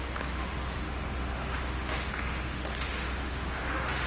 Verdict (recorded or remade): remade